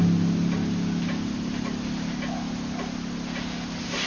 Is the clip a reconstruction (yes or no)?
no